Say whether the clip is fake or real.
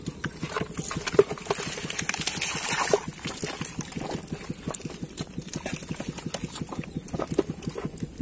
real